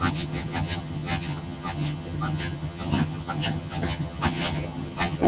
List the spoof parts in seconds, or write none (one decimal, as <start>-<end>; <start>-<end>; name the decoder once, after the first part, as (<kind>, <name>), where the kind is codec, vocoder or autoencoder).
0.0-5.3 (vocoder, HiFi-GAN)